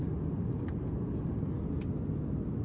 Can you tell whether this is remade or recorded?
recorded